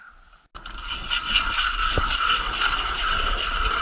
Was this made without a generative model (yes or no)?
yes